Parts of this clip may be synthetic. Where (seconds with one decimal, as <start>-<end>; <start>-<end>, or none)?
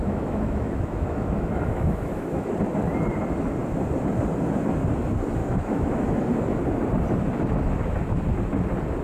0.0-2.5; 5.4-6.2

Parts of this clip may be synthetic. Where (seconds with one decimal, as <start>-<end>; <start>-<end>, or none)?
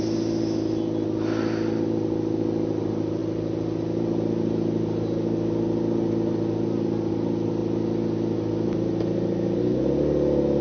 none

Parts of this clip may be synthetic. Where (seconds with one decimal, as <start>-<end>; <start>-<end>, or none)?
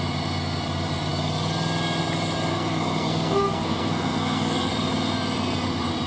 2.5-4.7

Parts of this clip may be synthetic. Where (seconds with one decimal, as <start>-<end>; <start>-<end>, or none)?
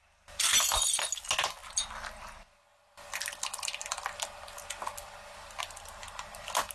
none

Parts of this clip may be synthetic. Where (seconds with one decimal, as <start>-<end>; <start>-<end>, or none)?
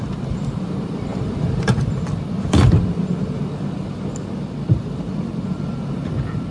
0.0-6.5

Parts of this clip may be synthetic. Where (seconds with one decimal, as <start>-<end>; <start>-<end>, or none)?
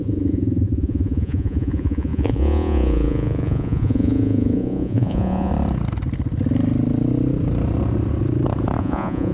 0.0-5.5; 8.8-9.3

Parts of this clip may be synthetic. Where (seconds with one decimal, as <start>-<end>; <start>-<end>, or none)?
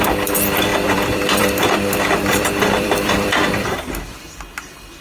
0.0-3.4